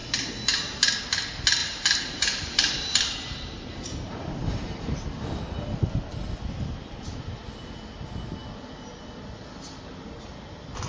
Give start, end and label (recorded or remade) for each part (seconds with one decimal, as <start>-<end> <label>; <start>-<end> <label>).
0.0-1.6 recorded; 1.6-5.4 remade; 5.4-10.9 recorded